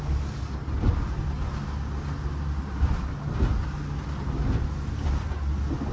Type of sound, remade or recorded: recorded